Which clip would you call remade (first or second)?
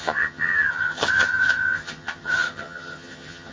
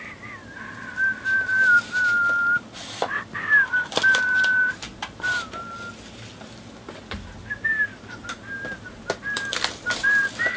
first